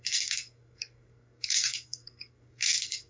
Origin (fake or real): fake